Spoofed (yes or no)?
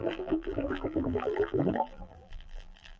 yes